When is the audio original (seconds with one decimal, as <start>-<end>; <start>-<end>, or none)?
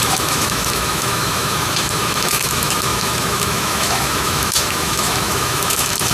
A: none